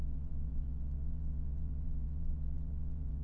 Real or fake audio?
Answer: fake